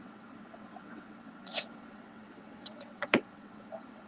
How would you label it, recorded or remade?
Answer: remade